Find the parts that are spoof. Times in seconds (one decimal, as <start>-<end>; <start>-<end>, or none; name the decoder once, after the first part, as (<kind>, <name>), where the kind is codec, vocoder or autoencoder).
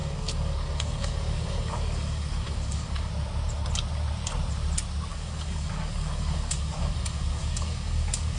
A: 0.0-3.1 (codec, DAC); 5.1-8.4